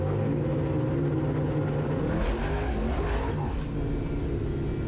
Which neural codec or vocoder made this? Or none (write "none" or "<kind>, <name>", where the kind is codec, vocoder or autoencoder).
none